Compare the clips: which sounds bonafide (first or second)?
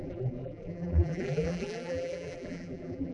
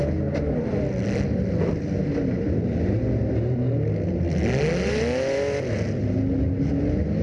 second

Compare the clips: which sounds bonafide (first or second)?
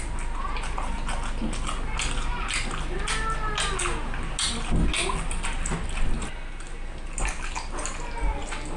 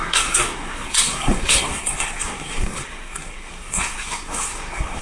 first